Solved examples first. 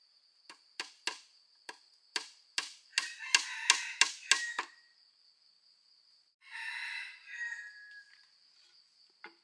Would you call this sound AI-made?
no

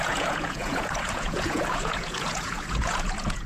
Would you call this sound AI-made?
yes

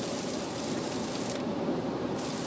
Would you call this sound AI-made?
no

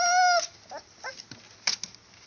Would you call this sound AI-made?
no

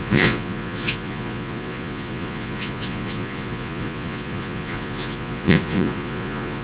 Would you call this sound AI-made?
yes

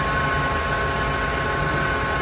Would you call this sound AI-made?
no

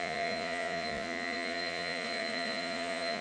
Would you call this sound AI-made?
yes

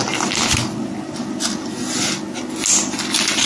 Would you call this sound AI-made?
no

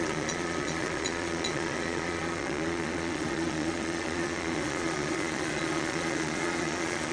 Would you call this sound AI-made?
yes